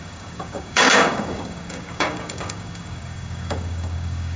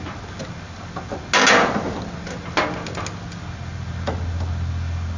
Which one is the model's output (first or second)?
first